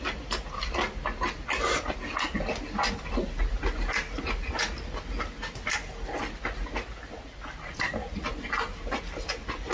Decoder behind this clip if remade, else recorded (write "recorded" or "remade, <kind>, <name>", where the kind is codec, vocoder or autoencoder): recorded